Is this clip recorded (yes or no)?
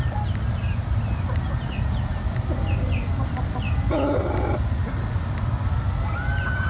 yes